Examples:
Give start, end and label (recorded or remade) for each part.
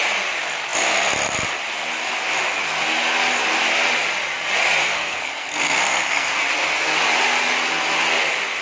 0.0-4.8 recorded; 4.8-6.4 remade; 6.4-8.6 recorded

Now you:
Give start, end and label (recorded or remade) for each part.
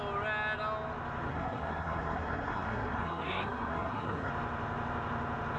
0.0-1.3 recorded; 1.3-4.3 remade; 4.3-5.6 recorded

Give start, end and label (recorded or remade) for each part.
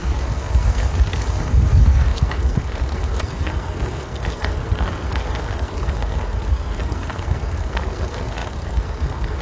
0.0-9.4 remade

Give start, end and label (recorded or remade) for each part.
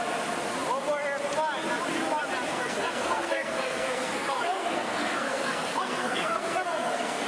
0.0-2.5 recorded; 2.5-7.3 remade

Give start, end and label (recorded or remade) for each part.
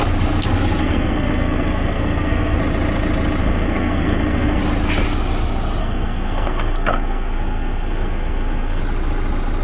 0.0-0.8 recorded; 0.8-2.6 remade; 2.6-3.4 recorded; 3.4-4.6 remade; 4.6-5.8 recorded; 5.8-8.8 remade; 8.8-9.6 recorded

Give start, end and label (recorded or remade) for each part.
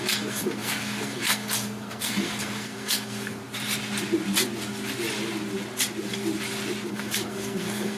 0.0-3.4 remade; 3.4-6.9 recorded; 6.9-8.0 remade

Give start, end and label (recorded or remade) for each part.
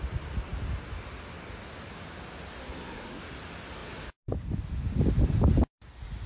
0.0-2.6 recorded; 2.6-3.2 remade; 3.2-6.3 recorded